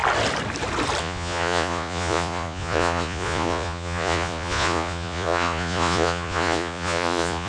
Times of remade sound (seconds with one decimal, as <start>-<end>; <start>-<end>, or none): 1.0-7.5